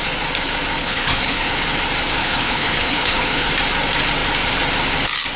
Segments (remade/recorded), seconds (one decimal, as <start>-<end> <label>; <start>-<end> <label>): 0.0-0.8 recorded; 0.8-1.5 remade; 1.5-2.2 recorded; 2.2-3.5 remade; 3.5-5.4 recorded